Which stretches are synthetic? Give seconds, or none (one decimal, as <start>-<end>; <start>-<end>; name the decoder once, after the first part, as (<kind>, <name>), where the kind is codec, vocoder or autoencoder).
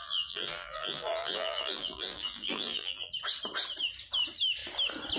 0.0-3.1 (vocoder, BigVGAN v2)